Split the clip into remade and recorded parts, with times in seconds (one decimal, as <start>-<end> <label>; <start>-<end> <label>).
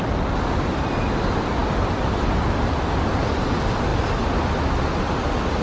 0.0-5.6 recorded